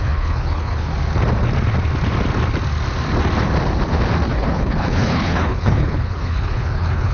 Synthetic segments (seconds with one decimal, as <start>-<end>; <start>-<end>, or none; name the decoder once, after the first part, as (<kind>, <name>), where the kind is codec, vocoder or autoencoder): 0.0-0.9 (codec, HILCodec); 4.3-7.1